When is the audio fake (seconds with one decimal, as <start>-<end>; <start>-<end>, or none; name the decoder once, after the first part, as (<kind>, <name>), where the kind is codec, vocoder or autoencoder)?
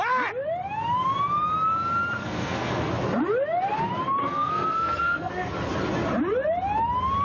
2.2-2.9 (codec, SNAC); 4.2-5.3